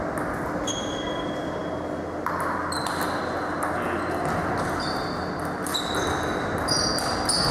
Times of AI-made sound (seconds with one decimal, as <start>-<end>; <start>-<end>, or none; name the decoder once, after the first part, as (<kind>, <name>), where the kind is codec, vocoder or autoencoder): none